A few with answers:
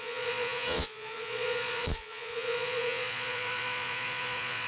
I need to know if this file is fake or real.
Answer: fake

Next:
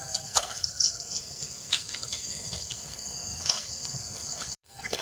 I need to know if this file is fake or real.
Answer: fake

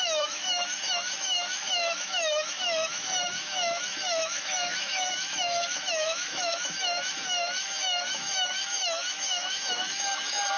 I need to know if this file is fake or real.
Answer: fake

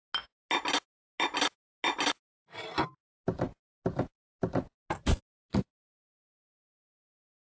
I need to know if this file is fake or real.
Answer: real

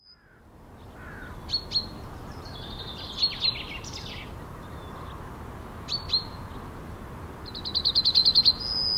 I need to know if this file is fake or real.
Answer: real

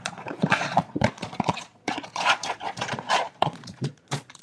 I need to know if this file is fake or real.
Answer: fake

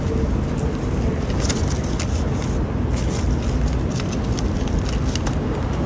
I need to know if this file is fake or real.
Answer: real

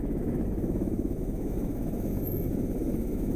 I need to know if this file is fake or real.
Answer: fake